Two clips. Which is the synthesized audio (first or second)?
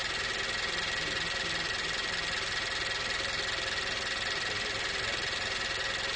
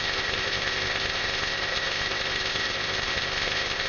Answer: second